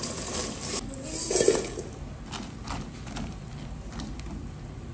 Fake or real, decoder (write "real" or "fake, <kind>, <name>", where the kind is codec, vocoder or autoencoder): real